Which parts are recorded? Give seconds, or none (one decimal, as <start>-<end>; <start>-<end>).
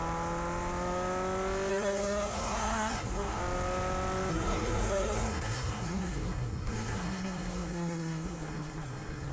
0.0-1.7; 3.4-4.3